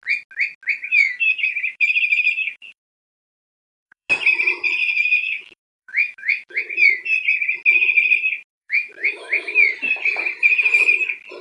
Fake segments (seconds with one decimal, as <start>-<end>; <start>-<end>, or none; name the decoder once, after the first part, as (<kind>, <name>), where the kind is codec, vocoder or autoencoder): 0.9-4.1 (autoencoder, DAC-VAE); 4.8-6.6; 8.5-9.7